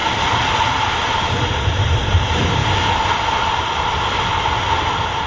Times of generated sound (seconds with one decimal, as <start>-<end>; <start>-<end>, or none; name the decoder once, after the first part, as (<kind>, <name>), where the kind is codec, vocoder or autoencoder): 1.1-2.6 (vocoder, BigVGAN v2)